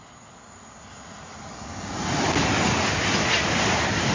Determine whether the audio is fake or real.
real